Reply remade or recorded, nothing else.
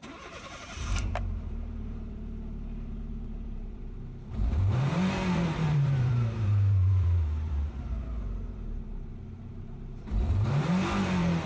remade